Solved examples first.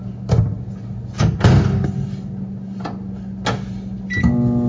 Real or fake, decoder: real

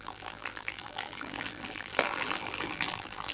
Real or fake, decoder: fake, vocoder, BigVGAN v2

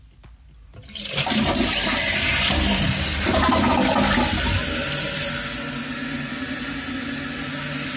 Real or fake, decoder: real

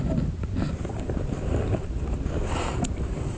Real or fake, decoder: fake, vocoder, BigVGAN v2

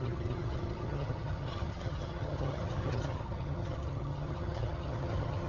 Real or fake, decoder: fake, vocoder, HiFi-GAN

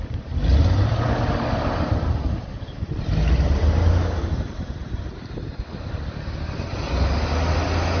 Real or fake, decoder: real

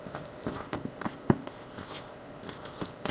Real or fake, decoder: fake, codec, ZipCodec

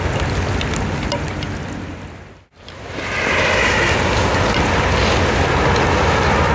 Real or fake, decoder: real